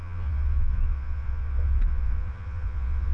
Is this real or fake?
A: fake